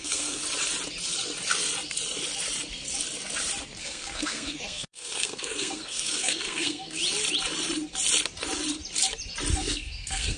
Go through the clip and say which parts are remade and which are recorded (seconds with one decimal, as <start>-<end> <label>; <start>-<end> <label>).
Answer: 0.0-0.4 remade; 0.4-3.8 recorded; 3.8-7.0 remade; 7.0-9.5 recorded; 9.5-10.4 remade